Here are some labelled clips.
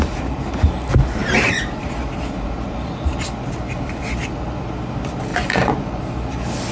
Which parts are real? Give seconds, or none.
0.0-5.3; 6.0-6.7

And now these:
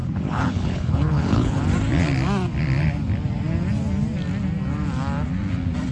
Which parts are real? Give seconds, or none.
1.6-5.9